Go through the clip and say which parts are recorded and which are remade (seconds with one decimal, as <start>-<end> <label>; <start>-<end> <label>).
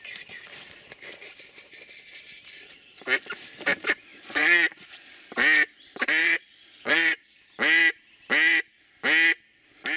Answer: 0.0-4.1 recorded; 4.1-5.3 remade; 5.3-6.2 recorded; 6.2-7.5 remade; 7.5-10.0 recorded